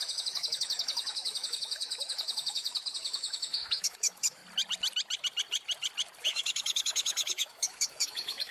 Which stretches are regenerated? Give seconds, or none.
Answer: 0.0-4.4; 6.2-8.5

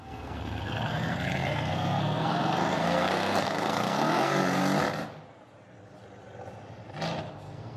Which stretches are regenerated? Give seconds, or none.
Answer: 0.0-4.6; 7.3-7.8

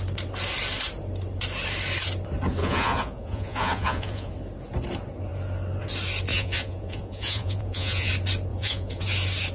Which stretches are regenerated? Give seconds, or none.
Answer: 2.6-4.3; 6.3-8.1; 8.5-9.1

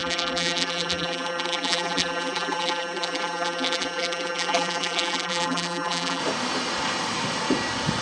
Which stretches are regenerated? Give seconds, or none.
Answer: 0.0-6.2

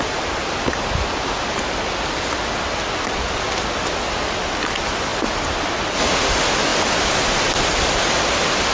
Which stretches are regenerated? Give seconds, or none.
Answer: none

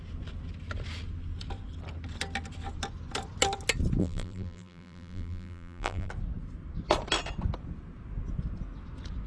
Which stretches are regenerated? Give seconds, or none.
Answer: 4.0-6.1

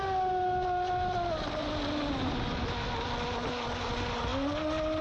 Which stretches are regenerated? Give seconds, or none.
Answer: none